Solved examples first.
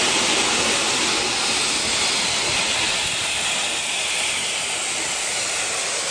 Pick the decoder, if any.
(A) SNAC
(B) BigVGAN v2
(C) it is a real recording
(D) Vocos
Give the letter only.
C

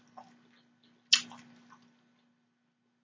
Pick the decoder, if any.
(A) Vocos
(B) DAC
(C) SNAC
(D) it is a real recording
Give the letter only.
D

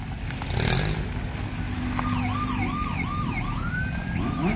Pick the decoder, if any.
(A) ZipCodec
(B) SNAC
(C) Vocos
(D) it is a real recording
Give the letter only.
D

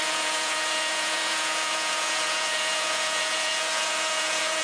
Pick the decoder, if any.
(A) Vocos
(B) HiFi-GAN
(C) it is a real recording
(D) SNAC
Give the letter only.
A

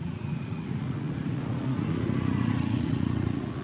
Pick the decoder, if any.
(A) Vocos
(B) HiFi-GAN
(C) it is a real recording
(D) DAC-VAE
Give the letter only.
A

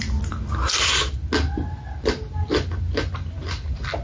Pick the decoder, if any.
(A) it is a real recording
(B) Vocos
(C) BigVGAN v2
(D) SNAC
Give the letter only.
A